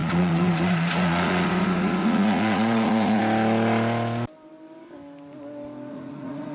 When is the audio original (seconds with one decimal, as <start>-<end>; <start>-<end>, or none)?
3.2-5.9